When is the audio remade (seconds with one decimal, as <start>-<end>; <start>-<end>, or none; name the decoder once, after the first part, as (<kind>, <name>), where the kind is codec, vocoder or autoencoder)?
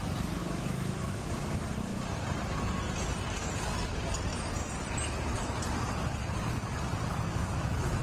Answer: 0.4-1.1 (autoencoder, DAC-VAE); 7.3-8.0